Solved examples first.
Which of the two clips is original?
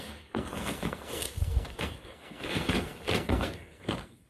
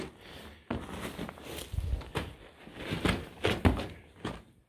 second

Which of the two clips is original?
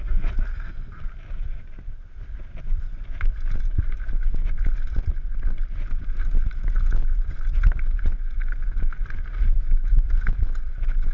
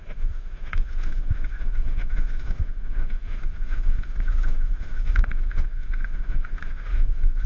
first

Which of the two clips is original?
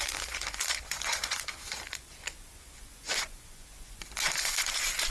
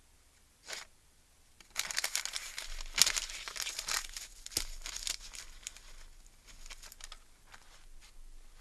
second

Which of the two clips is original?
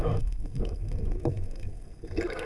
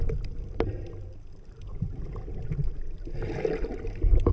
second